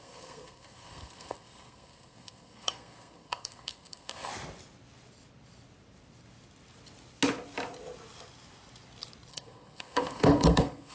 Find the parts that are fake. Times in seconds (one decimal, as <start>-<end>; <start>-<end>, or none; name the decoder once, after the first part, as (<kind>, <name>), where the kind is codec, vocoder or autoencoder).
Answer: 0.0-4.3 (codec, SNAC); 9.3-10.9